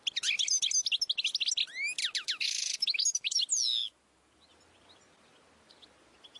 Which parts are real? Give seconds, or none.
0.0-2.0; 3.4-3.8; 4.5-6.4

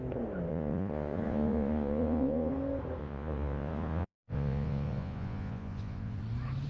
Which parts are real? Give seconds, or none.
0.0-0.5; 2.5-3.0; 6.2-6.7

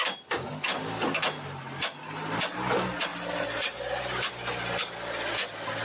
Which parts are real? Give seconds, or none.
0.0-5.8